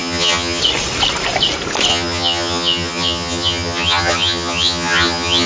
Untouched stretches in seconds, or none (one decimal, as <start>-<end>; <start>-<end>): 0.6-1.9